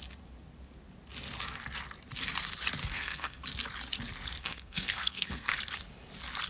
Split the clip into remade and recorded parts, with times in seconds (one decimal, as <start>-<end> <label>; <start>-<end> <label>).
0.0-2.8 recorded; 2.8-3.4 remade; 3.4-4.4 recorded; 4.4-5.6 remade; 5.6-6.5 recorded

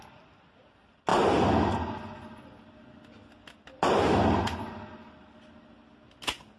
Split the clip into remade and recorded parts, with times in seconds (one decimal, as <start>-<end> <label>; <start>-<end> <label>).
0.0-6.6 recorded

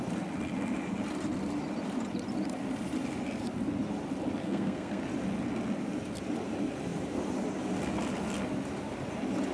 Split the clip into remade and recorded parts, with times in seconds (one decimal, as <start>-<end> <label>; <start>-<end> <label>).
0.0-4.4 recorded; 4.4-5.0 remade; 5.0-9.5 recorded

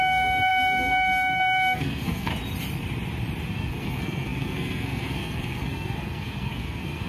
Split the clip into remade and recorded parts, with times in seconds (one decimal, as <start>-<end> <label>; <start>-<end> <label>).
0.0-2.3 remade; 2.3-3.5 recorded; 3.5-7.1 remade

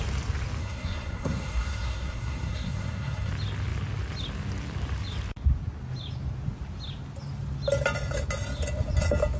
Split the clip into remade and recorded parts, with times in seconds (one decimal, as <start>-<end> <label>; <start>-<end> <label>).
0.0-0.6 recorded; 0.6-3.3 remade; 3.3-9.4 recorded

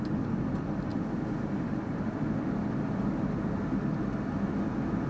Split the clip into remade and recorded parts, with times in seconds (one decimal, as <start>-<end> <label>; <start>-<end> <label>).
0.0-5.1 recorded